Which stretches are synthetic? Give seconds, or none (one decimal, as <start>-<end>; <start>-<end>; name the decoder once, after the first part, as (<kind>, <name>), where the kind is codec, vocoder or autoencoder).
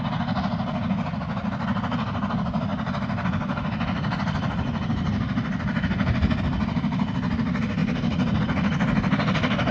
none